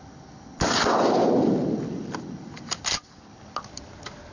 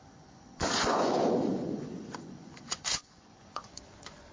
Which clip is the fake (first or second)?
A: second